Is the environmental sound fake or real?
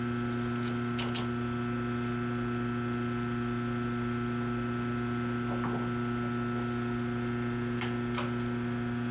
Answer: real